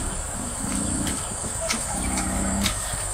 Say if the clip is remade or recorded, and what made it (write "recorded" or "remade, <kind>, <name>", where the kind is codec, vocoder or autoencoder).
remade, codec, DAC